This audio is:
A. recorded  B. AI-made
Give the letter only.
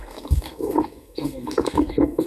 B